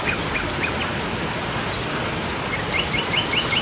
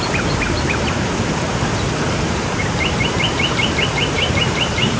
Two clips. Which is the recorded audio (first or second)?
first